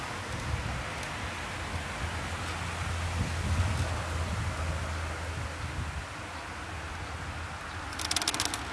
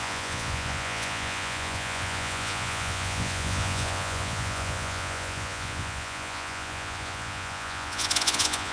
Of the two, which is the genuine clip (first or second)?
first